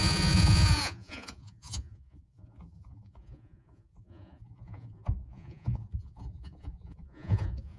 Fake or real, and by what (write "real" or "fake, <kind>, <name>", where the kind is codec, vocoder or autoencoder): fake, vocoder, Vocos